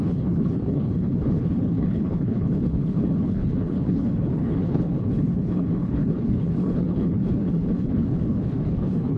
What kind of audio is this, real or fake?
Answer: fake